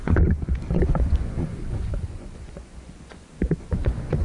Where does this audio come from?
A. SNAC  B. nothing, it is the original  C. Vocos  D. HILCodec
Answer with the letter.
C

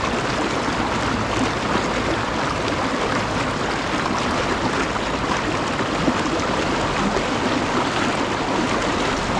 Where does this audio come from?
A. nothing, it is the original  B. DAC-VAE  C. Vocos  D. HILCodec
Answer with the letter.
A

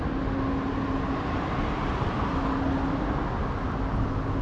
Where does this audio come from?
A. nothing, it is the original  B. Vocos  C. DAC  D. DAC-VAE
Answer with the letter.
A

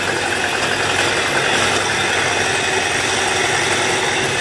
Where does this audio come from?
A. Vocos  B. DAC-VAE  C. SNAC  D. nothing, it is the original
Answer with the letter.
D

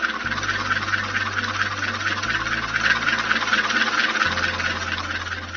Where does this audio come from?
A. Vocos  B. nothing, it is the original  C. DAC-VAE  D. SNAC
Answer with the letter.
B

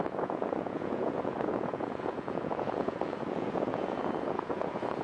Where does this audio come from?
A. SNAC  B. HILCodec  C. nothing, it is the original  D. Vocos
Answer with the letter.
D